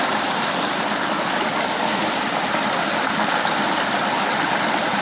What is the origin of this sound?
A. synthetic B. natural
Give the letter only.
B